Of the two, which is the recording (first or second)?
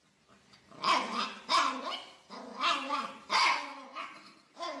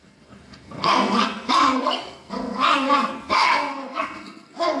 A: first